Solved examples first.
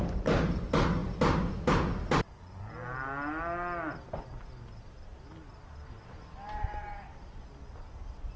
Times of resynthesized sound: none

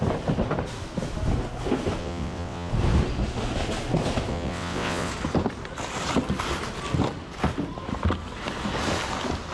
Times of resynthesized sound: 2.0-2.7 (vocoder, WaveNeXt); 4.3-5.1

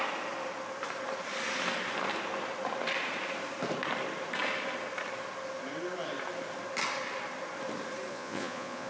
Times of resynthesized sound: 8.1-8.9 (vocoder, Vocos)

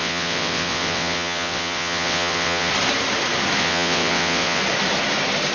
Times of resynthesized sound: 0.0-2.7 (vocoder, WaveNeXt); 3.6-4.6

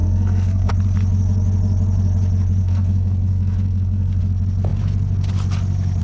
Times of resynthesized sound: 0.0-0.7 (codec, SNAC); 2.6-4.2